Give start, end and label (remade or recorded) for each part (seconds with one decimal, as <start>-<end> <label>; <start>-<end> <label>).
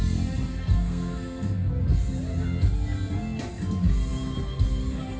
0.0-0.5 recorded; 0.5-1.7 remade; 1.7-5.2 recorded